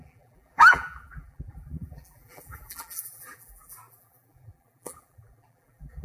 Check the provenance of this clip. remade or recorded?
remade